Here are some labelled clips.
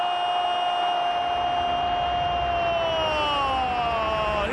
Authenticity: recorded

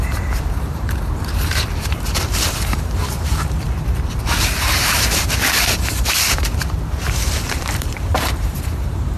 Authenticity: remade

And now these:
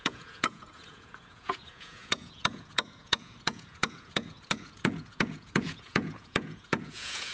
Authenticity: remade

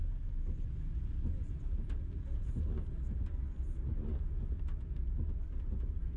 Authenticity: recorded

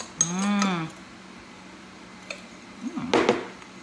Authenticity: recorded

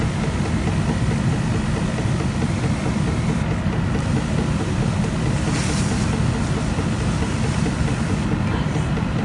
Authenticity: recorded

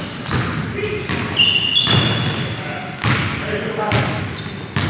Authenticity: recorded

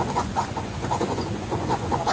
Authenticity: remade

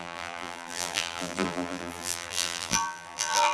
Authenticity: remade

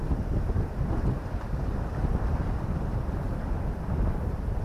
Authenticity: recorded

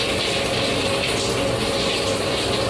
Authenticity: recorded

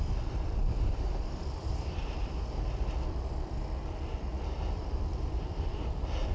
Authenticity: remade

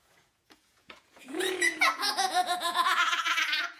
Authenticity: remade